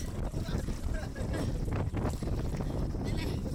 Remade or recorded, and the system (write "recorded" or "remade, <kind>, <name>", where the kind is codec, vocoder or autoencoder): recorded